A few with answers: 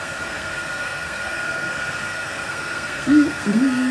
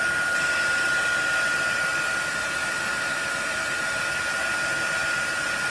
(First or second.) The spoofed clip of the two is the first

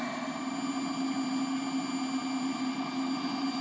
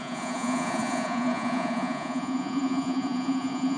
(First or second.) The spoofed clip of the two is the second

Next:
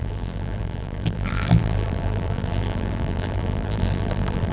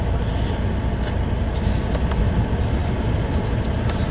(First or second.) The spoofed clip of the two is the first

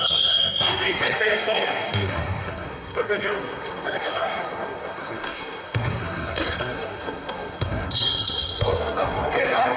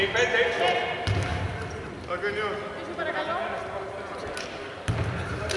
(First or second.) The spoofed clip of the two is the first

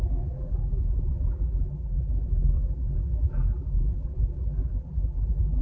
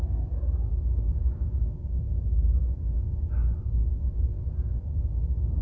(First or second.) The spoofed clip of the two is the first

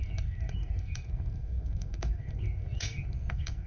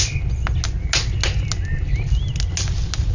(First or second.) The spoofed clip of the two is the first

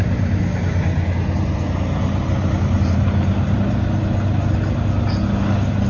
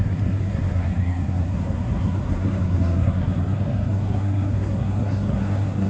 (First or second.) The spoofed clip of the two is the second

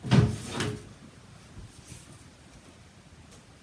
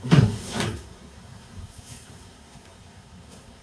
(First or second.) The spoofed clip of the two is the second